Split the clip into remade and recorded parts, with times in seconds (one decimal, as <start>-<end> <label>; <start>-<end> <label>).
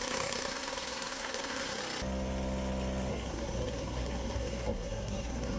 0.0-1.8 remade; 1.8-3.1 recorded; 3.1-5.6 remade